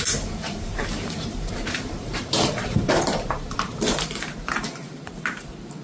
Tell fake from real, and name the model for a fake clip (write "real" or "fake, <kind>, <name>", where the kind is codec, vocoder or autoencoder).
fake, vocoder, BigVGAN v2